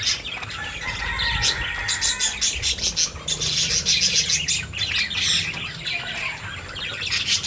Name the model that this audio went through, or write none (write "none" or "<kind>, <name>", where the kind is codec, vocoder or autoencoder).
none